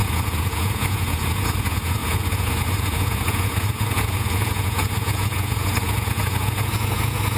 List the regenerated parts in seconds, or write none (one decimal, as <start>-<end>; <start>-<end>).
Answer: 0.0-7.4